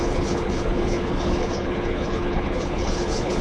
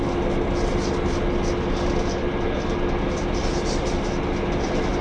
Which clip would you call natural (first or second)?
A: second